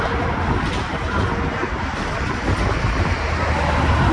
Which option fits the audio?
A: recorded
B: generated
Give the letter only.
A